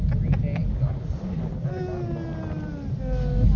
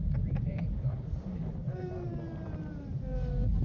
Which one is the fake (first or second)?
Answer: second